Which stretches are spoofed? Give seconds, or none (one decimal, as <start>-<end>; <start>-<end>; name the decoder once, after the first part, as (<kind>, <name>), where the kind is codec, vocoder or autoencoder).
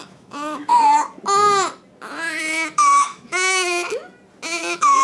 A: 0.0-0.7 (autoencoder, DAC-VAE); 2.4-4.0; 4.6-5.0